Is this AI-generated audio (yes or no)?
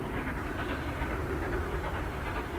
no